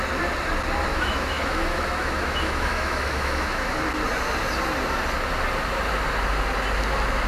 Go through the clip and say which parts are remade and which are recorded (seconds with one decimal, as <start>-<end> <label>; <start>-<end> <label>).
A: 0.0-0.9 recorded; 0.9-3.8 remade; 3.8-7.3 recorded